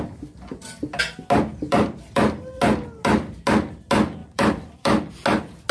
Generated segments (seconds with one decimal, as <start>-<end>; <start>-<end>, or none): 1.5-2.6; 4.2-5.1